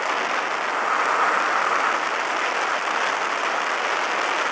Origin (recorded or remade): recorded